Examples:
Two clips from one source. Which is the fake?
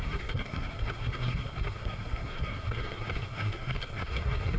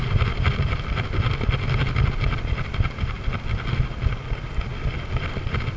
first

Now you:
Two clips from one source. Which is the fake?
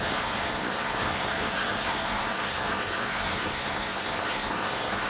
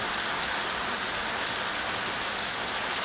first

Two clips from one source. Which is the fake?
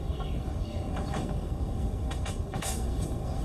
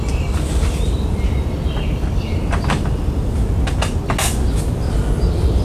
first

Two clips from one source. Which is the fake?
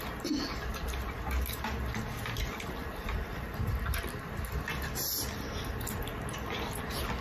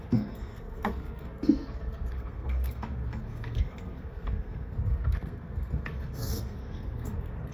second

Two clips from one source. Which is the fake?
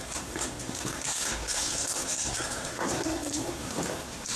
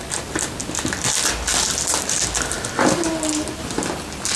first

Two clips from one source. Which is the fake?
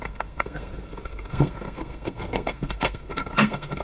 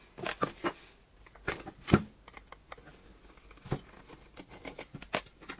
first